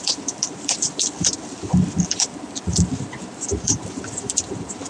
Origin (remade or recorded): remade